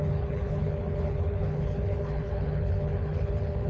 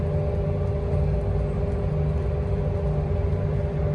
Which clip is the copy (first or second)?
first